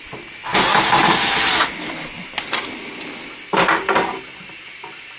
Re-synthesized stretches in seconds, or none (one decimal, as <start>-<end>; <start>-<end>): none